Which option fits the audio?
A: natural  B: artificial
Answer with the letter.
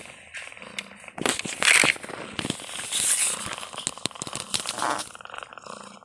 A